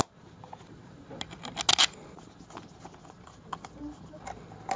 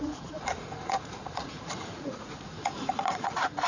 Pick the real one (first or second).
first